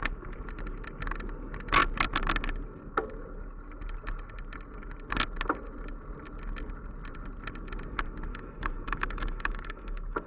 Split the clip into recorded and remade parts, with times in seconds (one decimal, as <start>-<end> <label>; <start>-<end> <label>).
0.0-8.3 recorded; 8.3-10.3 remade